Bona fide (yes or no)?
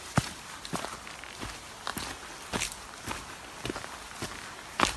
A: yes